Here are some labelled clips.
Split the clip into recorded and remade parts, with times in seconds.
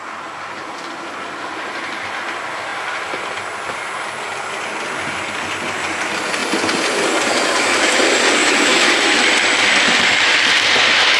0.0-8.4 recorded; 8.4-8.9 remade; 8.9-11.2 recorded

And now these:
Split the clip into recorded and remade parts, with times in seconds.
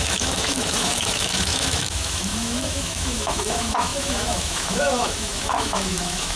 0.0-6.4 remade